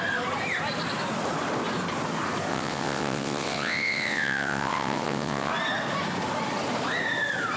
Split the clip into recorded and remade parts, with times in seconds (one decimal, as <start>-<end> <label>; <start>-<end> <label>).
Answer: 0.0-2.5 recorded; 2.5-5.5 remade; 5.5-7.6 recorded